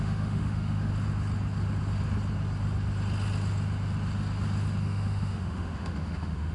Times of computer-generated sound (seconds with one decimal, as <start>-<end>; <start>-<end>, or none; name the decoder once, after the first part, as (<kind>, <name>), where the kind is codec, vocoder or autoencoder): 0.0-0.9 (autoencoder, DAC-VAE); 4.8-6.5

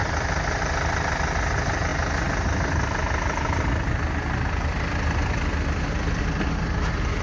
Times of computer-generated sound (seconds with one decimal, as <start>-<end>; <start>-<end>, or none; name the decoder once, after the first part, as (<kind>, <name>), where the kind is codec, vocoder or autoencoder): 0.0-0.6 (vocoder, BigVGAN v2)

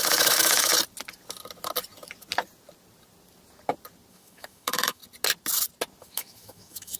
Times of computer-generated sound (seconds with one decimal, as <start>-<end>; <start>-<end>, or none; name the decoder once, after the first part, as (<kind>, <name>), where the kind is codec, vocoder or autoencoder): 0.0-0.7 (autoencoder, DAC-VAE); 4.1-5.0; 6.0-7.0

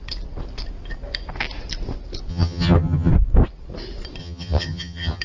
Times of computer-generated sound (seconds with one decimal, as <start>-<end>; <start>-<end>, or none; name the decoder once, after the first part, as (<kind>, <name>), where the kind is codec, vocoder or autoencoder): 2.3-3.1 (vocoder, HiFi-GAN); 4.2-5.2